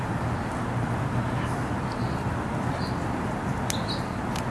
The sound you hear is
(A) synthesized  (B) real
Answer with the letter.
B